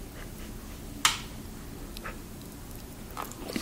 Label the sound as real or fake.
real